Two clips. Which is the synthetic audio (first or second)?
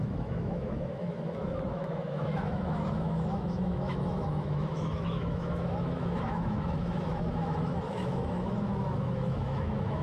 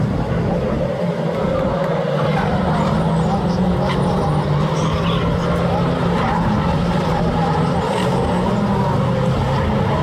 first